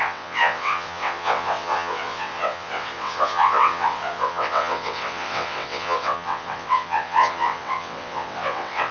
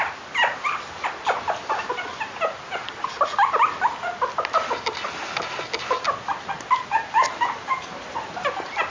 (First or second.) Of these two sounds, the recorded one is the second